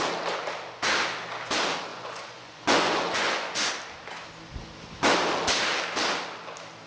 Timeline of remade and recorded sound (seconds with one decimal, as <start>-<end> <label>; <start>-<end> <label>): 0.0-1.9 recorded; 1.9-3.7 remade; 3.7-6.9 recorded